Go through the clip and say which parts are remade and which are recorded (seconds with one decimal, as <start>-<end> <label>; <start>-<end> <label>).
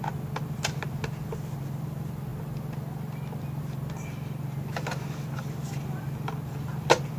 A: 0.0-7.2 recorded